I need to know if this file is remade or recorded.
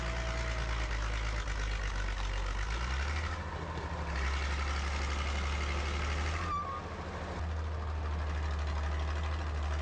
recorded